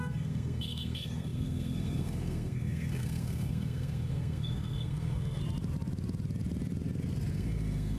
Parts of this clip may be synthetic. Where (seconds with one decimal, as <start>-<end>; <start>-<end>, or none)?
0.0-5.4; 7.3-8.0